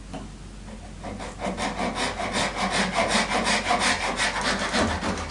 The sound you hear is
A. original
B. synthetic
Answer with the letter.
A